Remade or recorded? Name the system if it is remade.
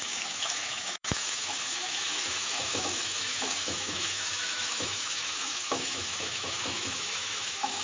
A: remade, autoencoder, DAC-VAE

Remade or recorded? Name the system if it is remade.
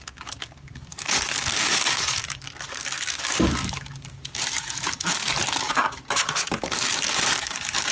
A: remade, codec, DAC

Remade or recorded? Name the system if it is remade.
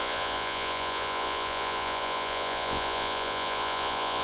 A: remade, vocoder, Vocos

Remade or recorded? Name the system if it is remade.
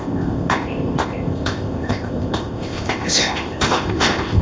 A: remade, codec, ZipCodec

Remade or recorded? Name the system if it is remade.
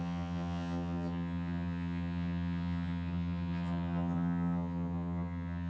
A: remade, vocoder, HiFi-GAN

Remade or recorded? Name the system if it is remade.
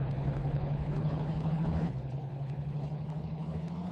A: remade, codec, HILCodec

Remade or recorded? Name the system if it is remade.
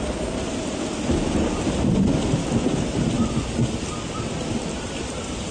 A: recorded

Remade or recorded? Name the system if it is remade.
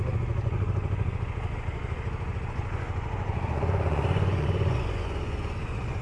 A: remade, vocoder, Vocos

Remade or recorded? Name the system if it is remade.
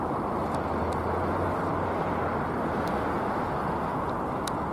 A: recorded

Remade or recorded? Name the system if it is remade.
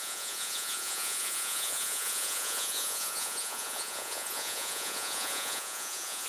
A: remade, vocoder, Vocos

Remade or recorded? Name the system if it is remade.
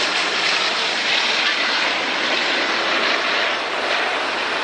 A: recorded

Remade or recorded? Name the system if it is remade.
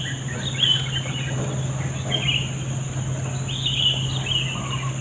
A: recorded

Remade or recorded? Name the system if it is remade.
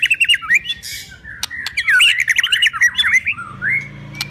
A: recorded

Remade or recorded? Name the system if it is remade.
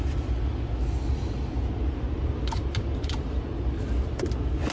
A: recorded